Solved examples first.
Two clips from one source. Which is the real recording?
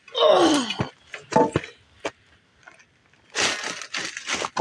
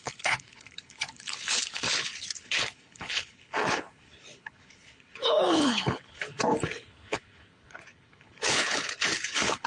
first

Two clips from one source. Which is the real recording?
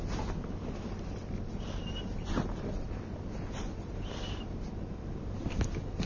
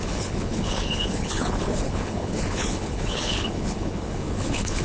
first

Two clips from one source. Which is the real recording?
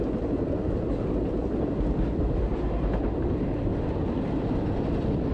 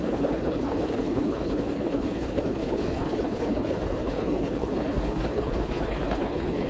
first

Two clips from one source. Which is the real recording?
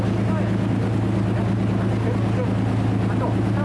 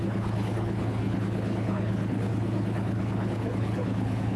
first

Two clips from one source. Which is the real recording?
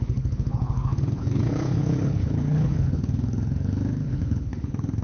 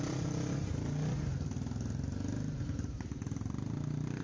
second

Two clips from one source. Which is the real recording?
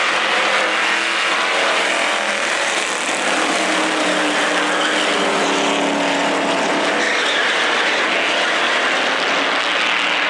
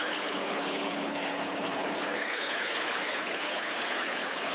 first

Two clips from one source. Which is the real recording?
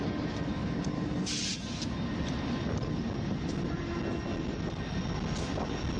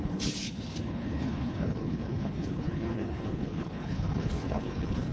first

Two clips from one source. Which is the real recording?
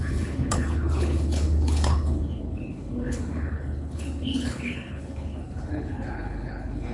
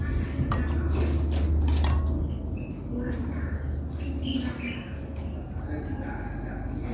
second